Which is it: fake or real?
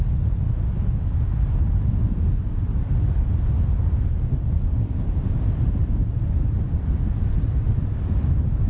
real